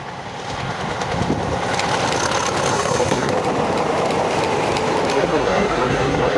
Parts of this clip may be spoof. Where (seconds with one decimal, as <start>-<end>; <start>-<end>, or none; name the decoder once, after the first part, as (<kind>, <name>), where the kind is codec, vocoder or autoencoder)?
2.7-3.3 (codec, SNAC); 5.1-6.4